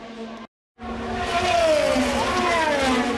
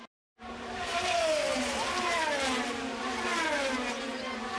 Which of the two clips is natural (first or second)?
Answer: first